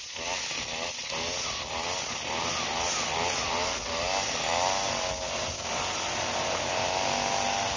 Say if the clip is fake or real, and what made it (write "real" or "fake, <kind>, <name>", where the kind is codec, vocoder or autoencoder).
real